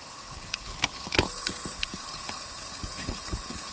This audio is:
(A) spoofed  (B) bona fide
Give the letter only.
A